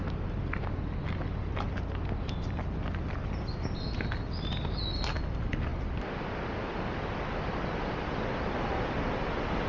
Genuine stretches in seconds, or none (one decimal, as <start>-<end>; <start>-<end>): 0.0-9.7